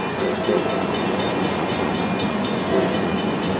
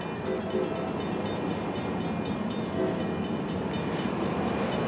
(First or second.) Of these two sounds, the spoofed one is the first